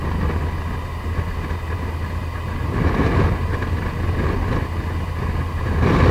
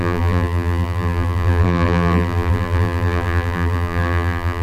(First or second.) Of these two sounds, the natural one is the first